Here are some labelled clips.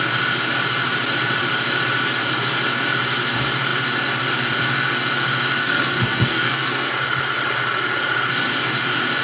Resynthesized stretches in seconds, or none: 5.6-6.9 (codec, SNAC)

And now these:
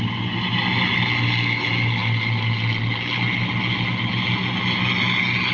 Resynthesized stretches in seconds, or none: none

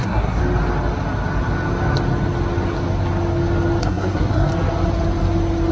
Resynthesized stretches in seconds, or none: 0.0-0.4 (codec, SNAC); 3.8-4.5

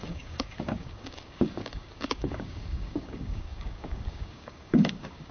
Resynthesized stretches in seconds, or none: 0.0-5.3 (codec, DAC)

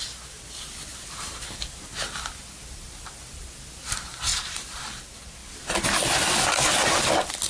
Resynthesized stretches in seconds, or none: 0.9-2.3 (vocoder, BigVGAN v2); 4.3-4.8